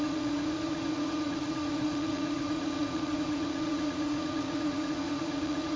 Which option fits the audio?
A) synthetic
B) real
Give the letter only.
A